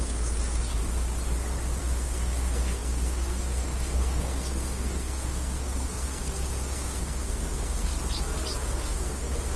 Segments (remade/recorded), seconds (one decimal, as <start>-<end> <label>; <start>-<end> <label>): 0.0-0.8 remade; 0.8-1.8 recorded; 1.8-7.9 remade; 7.9-8.6 recorded; 8.6-9.6 remade